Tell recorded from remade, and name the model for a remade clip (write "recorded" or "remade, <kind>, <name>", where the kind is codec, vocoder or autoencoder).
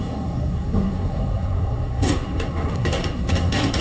remade, codec, SNAC